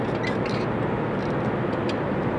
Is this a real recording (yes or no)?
yes